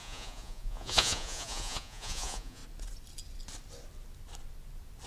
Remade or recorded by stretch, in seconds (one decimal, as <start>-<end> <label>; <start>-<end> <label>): 0.0-2.6 remade; 2.6-5.1 recorded